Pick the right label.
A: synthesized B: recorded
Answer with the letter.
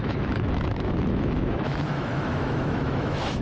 A